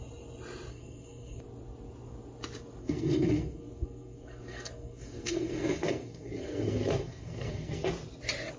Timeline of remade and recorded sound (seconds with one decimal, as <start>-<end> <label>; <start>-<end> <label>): 0.0-0.7 recorded; 0.7-1.4 remade; 1.4-2.8 recorded; 2.8-7.9 remade; 7.9-8.6 recorded